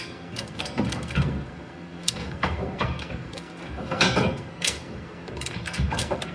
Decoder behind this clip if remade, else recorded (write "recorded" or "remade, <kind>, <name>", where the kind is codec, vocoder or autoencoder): remade, codec, SNAC